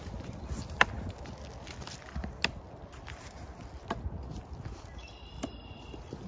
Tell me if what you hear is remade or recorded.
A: recorded